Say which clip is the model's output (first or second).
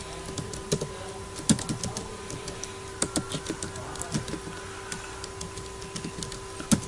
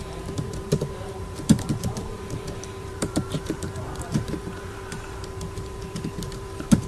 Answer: second